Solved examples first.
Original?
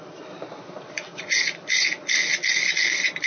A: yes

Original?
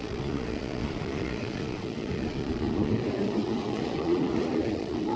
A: no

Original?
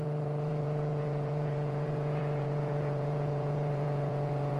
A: no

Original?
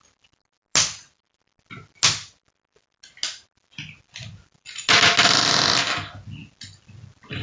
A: yes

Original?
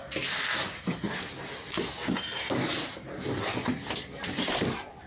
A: yes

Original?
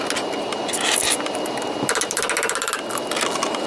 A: yes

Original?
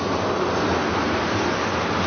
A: yes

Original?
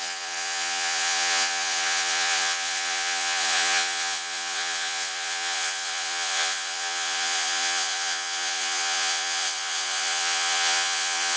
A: no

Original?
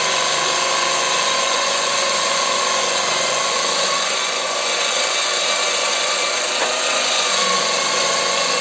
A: no